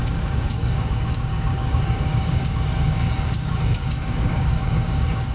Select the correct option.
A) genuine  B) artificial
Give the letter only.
B